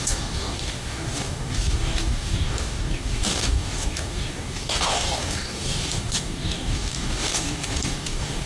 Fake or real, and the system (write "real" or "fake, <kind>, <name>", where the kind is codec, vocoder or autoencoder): fake, codec, DAC